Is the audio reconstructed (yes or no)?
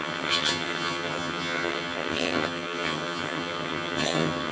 yes